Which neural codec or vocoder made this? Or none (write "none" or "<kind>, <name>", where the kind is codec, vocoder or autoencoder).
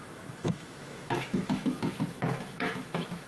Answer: autoencoder, DAC-VAE